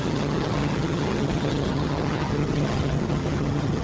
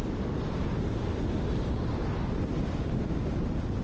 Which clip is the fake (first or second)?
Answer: first